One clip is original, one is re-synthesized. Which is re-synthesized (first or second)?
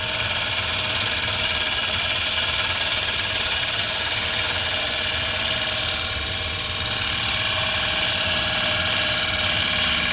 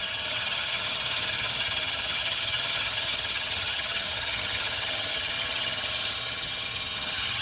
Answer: second